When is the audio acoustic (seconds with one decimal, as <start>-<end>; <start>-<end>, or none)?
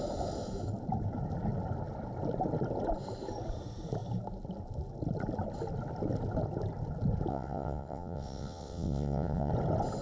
0.0-7.3; 9.5-10.0